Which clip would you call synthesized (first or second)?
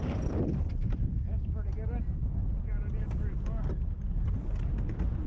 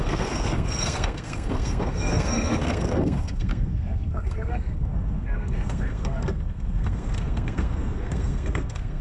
second